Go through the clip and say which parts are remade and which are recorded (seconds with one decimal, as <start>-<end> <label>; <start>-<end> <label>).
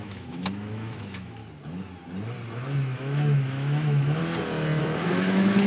0.0-1.4 remade; 1.4-3.0 recorded; 3.0-4.2 remade; 4.2-4.8 recorded; 4.8-5.7 remade